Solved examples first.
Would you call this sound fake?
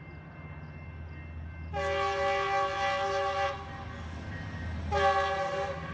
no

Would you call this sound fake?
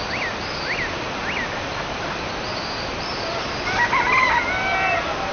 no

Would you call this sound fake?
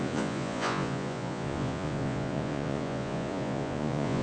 yes